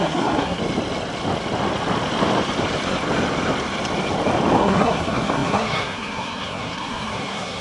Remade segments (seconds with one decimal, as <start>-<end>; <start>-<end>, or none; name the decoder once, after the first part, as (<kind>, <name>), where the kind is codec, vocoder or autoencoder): 0.0-0.6 (codec, SNAC); 4.6-7.6